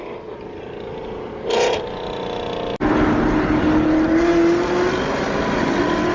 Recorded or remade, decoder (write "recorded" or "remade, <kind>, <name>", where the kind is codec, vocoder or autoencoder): recorded